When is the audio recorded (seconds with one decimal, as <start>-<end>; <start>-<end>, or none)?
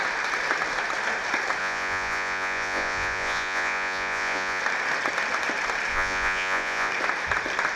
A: 0.0-1.6; 4.6-5.9; 6.9-7.8